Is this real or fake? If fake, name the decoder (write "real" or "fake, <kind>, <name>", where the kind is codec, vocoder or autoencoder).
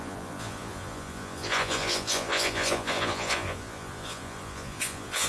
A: fake, vocoder, Vocos